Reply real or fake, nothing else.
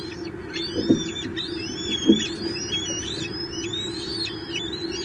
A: real